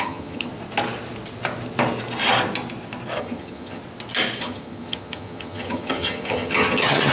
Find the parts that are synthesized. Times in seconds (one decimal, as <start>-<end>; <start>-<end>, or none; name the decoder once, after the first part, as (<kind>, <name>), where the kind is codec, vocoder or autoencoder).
0.0-0.5 (vocoder, HiFi-GAN); 3.2-3.8; 4.4-7.1